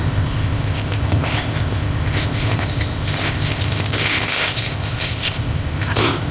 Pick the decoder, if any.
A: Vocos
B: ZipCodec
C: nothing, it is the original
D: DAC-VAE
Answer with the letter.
B